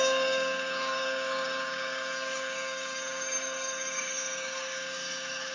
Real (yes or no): no